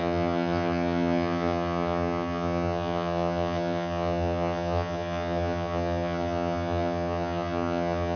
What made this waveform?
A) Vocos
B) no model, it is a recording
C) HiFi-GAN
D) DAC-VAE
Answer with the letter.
C